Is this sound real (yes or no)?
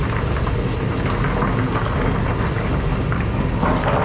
yes